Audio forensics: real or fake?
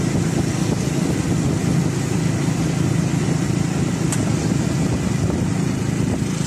real